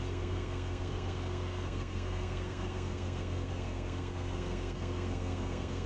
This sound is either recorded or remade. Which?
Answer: remade